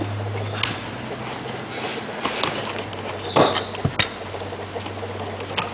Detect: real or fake real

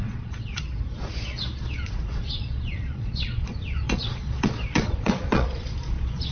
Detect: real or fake fake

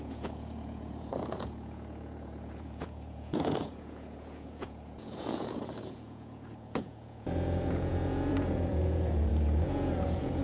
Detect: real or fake fake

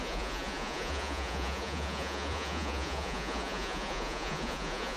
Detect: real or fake fake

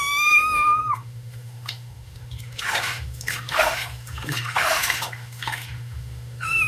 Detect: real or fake fake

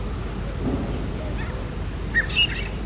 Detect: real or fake real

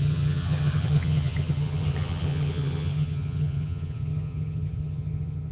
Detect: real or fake fake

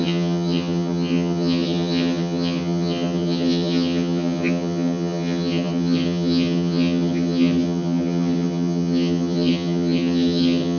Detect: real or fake fake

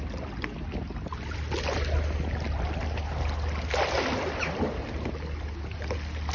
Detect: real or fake real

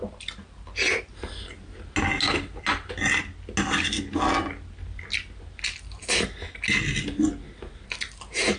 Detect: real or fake real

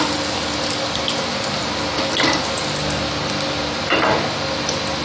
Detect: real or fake real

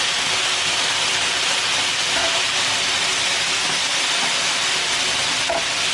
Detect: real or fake real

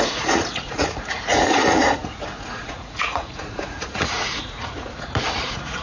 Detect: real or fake fake